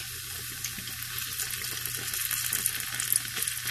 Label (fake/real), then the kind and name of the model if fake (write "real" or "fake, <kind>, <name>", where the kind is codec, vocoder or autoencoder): real